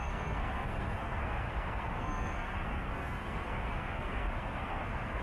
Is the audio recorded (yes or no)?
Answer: no